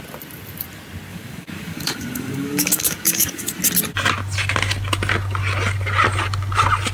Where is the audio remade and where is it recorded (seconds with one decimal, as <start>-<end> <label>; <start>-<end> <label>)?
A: 0.0-1.1 recorded; 1.1-3.5 remade; 3.5-6.9 recorded